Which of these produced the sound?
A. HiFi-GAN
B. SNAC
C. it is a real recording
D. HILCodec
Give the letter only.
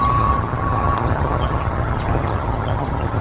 A